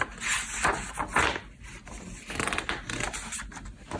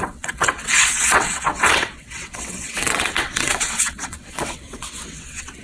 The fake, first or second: second